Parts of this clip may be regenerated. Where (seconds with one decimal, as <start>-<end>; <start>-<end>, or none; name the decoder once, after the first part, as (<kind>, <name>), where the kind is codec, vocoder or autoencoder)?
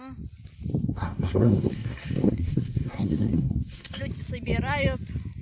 0.8-4.0 (codec, SNAC)